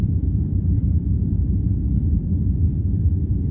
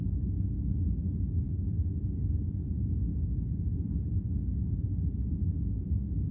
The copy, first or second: first